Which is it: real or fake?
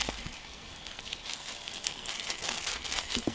fake